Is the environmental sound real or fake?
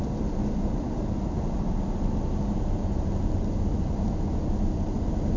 real